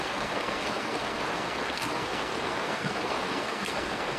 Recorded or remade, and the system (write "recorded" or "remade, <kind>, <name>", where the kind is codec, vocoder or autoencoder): remade, codec, SNAC